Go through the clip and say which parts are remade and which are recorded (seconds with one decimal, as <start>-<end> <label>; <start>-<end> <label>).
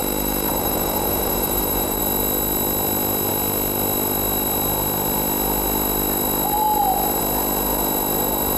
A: 0.0-2.0 remade; 2.0-8.6 recorded